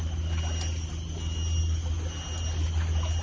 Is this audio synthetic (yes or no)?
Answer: no